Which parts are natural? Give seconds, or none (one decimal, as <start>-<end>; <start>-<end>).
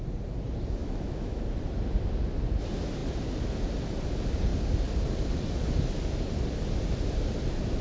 0.0-0.8; 1.4-7.8